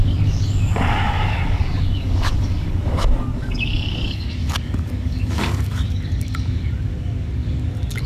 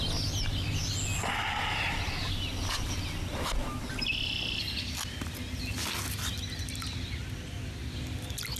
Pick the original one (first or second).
second